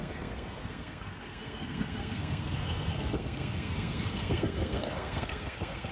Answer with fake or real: fake